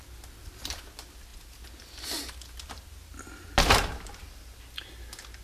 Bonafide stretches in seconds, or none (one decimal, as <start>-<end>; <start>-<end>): 0.0-5.4